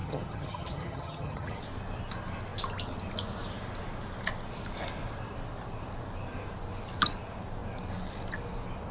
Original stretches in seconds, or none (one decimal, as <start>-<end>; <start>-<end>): 1.6-8.9